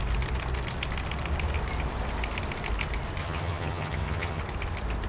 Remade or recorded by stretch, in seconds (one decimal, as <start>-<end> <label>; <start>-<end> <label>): 0.0-3.2 recorded; 3.2-4.4 remade; 4.4-5.1 recorded